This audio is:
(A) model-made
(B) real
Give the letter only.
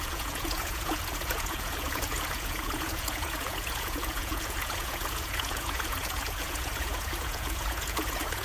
A